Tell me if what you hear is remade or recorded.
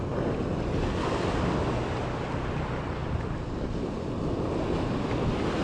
recorded